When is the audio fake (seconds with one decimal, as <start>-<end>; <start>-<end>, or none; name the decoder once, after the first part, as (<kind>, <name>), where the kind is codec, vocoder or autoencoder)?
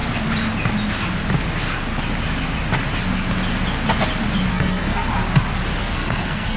4.5-5.1 (codec, SNAC); 5.8-6.6